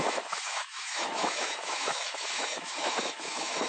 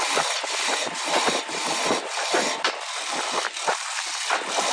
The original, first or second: second